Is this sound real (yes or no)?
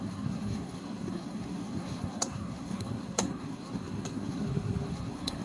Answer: no